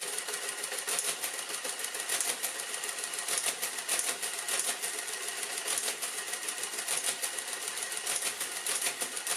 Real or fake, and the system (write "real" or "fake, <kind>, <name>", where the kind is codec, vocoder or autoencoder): real